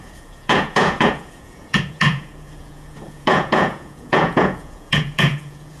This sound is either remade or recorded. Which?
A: remade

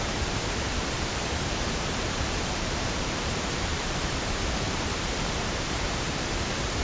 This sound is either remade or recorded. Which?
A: remade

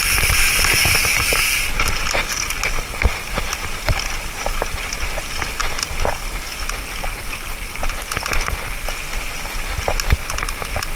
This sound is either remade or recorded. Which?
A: recorded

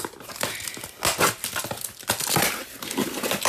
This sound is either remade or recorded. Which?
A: recorded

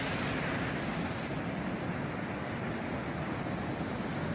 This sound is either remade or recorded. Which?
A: recorded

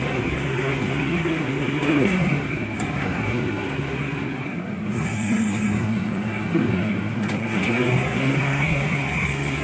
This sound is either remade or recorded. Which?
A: remade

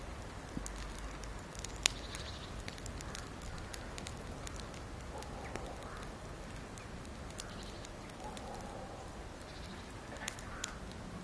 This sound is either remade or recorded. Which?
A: recorded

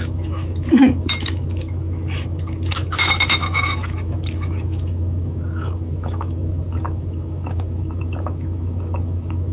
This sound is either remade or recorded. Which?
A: remade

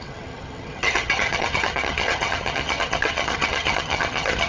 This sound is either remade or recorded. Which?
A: remade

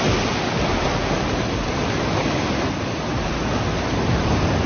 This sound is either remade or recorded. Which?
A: recorded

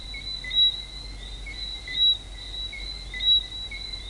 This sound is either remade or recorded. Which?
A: recorded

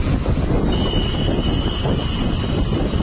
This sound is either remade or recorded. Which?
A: recorded